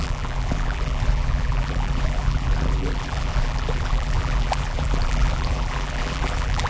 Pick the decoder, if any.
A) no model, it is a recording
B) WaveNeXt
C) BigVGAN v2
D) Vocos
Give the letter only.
C